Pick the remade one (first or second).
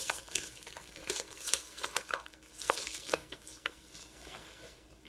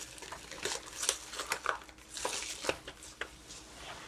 first